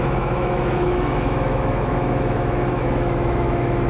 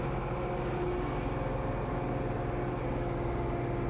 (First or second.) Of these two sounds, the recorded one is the second